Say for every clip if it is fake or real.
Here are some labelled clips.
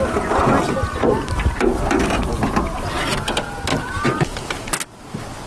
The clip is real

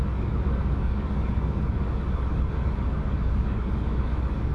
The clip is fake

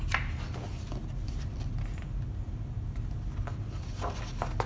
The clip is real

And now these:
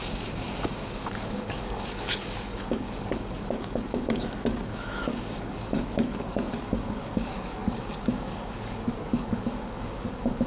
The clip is fake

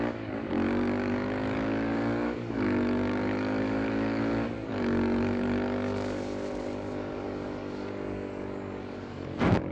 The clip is fake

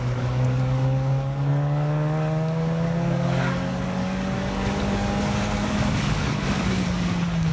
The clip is fake